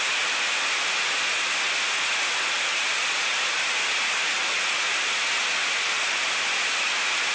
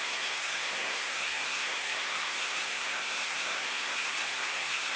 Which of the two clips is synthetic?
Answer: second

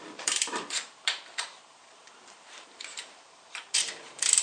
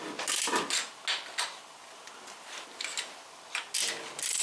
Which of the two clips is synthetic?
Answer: first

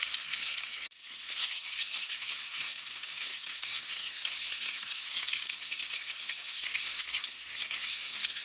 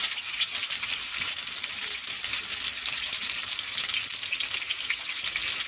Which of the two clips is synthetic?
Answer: first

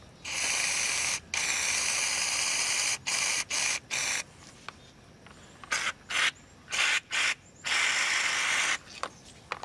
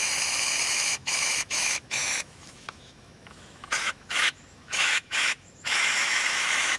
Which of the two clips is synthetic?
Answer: second